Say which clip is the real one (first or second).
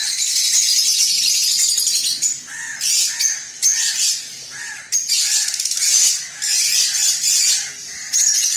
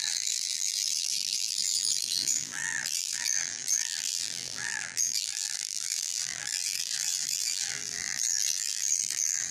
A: first